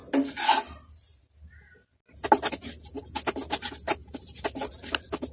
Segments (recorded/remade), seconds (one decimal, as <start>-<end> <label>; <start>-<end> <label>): 0.0-4.0 recorded; 4.0-4.7 remade; 4.7-5.3 recorded